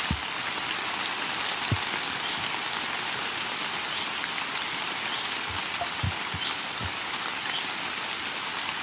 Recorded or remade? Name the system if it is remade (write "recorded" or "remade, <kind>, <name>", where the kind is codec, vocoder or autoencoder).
recorded